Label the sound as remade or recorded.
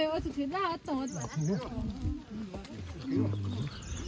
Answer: recorded